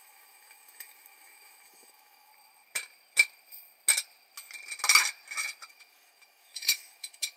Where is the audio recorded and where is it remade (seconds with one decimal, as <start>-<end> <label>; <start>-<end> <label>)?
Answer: 0.0-2.3 remade; 2.3-5.7 recorded; 5.7-7.4 remade